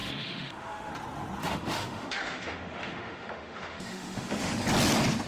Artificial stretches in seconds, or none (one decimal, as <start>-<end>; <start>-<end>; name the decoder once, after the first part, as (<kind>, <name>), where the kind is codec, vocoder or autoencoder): 0.0-0.9 (autoencoder, DAC-VAE); 1.4-4.6